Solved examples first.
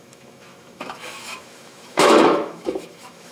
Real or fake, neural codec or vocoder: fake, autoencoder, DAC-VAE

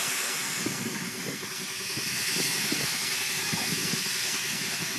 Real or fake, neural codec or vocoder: fake, codec, SNAC